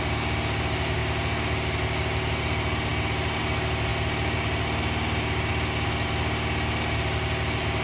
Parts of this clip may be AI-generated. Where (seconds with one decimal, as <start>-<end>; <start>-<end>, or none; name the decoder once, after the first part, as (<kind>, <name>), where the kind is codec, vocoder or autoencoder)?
none